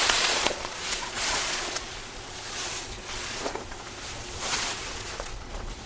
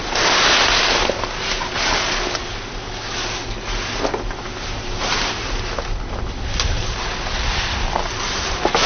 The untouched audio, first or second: second